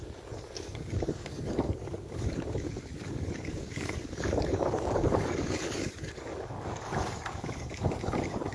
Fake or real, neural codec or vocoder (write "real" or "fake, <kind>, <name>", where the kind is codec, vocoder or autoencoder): fake, codec, DAC